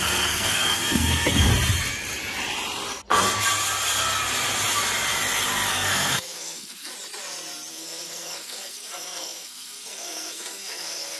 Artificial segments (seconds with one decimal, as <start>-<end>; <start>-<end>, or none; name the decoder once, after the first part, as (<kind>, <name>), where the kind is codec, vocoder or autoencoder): 0.0-1.5 (codec, SNAC); 5.7-6.9; 7.7-11.2